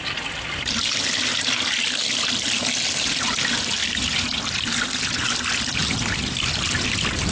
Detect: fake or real real